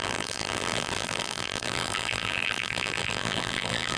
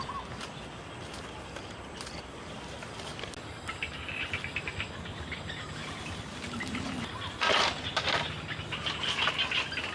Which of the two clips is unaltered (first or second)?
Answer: second